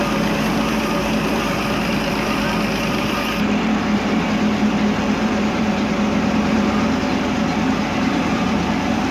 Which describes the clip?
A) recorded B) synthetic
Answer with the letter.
B